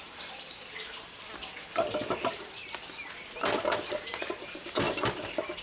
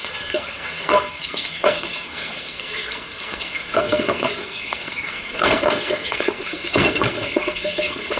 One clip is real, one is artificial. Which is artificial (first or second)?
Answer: second